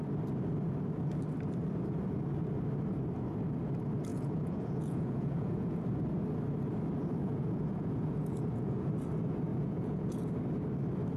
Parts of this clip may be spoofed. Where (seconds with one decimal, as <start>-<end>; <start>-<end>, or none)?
4.1-5.8; 7.2-8.9; 9.5-10.3